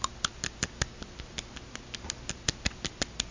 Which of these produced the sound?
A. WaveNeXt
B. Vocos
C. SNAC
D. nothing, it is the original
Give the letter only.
D